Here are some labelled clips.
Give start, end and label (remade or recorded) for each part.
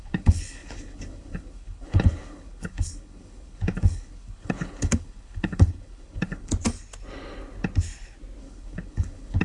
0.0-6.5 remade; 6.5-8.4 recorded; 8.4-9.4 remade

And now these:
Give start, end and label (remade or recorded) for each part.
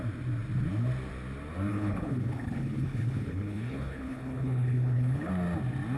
0.0-1.7 recorded; 1.7-5.3 remade; 5.3-6.0 recorded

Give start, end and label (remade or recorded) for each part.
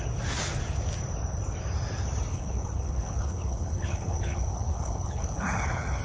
0.0-2.3 recorded; 2.3-6.0 remade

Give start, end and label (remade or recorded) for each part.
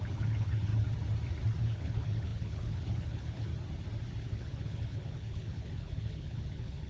0.0-0.7 remade; 0.7-1.6 recorded; 1.6-3.5 remade; 3.5-4.2 recorded; 4.2-6.9 remade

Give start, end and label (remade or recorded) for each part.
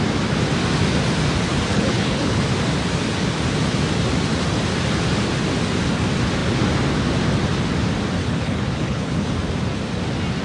0.0-1.5 recorded; 1.5-2.4 remade; 2.4-8.2 recorded; 8.2-9.3 remade; 9.3-10.4 recorded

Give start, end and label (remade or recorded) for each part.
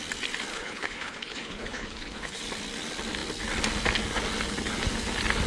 0.0-0.5 recorded; 0.5-2.4 remade; 2.4-5.5 recorded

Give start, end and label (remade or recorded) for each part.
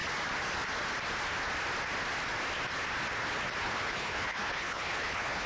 0.0-3.6 recorded; 3.6-5.5 remade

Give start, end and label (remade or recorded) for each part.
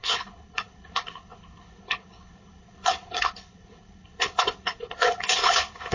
0.0-5.9 remade